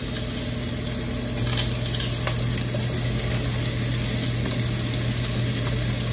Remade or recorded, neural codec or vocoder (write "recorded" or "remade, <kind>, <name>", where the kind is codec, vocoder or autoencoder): recorded